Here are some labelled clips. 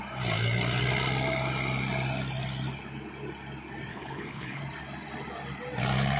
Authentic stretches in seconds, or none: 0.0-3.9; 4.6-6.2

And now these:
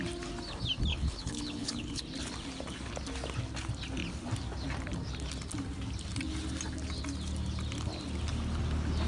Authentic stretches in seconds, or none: 0.0-0.9; 2.0-9.1

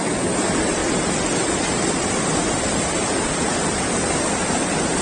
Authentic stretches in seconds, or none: 0.0-5.0

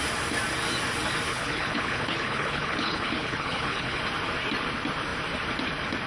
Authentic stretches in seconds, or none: 0.0-1.3; 4.0-6.1

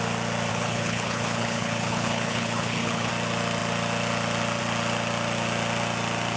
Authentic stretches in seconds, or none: 0.0-0.5; 3.1-6.4

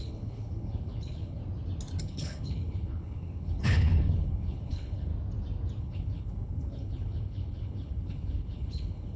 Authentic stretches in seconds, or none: 1.4-2.0; 5.1-5.8

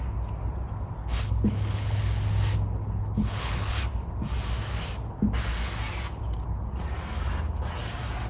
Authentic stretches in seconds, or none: 0.0-1.0; 2.0-2.8; 3.8-8.3